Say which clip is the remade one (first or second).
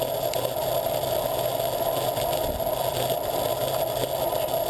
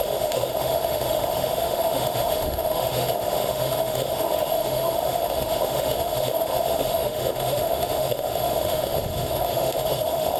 second